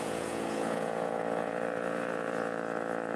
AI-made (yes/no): yes